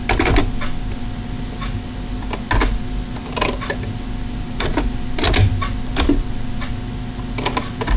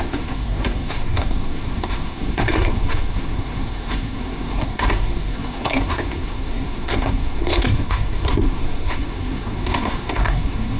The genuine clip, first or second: first